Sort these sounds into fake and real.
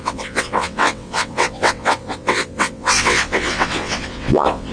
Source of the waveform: fake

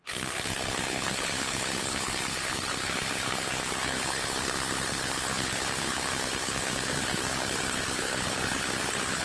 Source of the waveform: fake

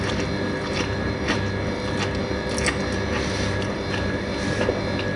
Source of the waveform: real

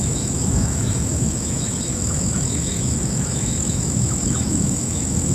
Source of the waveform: fake